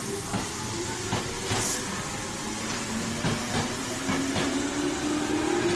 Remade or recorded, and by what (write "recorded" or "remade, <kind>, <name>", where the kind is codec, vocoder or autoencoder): recorded